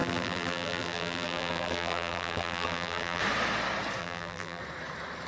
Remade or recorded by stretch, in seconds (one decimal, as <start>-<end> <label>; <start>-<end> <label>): 0.0-3.2 remade; 3.2-4.0 recorded; 4.0-4.6 remade; 4.6-5.3 recorded